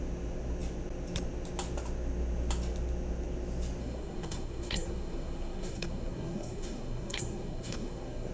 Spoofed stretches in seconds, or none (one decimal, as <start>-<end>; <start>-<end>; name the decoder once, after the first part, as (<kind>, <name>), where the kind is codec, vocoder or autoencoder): 3.8-8.3 (codec, SNAC)